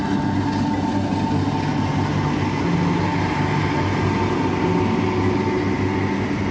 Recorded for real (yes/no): yes